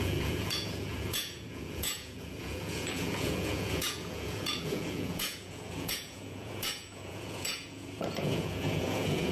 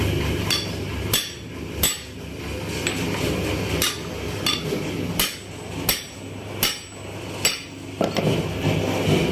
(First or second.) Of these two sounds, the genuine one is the second